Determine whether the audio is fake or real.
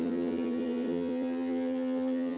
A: fake